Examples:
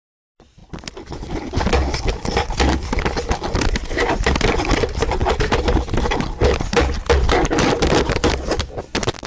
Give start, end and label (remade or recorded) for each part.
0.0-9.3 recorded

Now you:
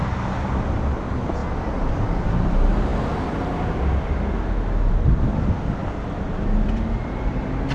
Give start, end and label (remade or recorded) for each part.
0.0-0.6 recorded; 0.6-1.4 remade; 1.4-1.9 recorded; 1.9-2.9 remade; 2.9-4.9 recorded; 4.9-7.7 remade

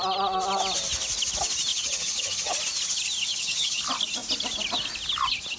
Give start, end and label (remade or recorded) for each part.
0.0-1.7 recorded; 1.7-2.6 remade; 2.6-3.3 recorded; 3.3-3.8 remade; 3.8-5.6 recorded